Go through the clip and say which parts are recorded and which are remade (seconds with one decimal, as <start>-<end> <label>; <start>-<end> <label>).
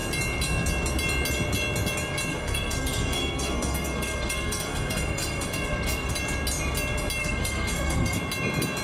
0.0-2.3 recorded; 2.3-6.1 remade; 6.1-7.2 recorded; 7.2-8.2 remade; 8.2-8.8 recorded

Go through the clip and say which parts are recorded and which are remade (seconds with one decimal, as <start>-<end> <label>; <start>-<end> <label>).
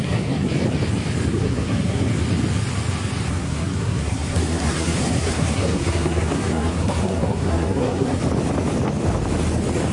0.0-0.5 remade; 0.5-1.3 recorded; 1.3-2.1 remade; 2.1-3.3 recorded; 3.3-8.2 remade; 8.2-9.9 recorded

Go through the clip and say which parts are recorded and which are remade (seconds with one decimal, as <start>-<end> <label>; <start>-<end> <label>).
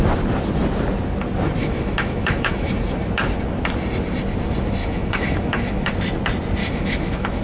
0.0-1.6 recorded; 1.6-2.7 remade; 2.7-4.8 recorded; 4.8-5.9 remade; 5.9-6.6 recorded; 6.6-7.4 remade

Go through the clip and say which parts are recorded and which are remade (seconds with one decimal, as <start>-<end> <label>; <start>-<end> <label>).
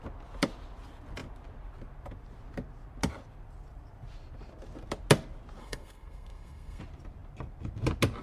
0.0-5.6 recorded; 5.6-6.8 remade; 6.8-8.2 recorded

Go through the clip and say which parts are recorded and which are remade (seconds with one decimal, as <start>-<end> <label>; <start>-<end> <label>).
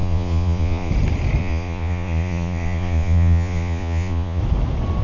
0.0-0.9 remade; 0.9-1.4 recorded; 1.4-4.4 remade; 4.4-5.0 recorded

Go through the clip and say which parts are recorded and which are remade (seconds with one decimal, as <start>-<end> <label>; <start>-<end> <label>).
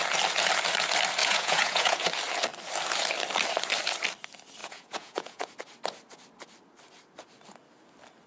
0.0-1.2 recorded; 1.2-2.1 remade; 2.1-4.6 recorded; 4.6-5.5 remade; 5.5-8.3 recorded